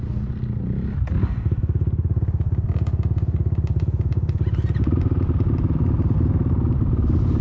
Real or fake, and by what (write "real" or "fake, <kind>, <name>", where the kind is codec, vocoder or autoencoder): real